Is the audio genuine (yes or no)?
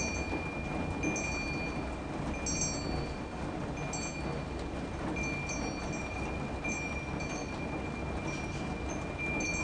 yes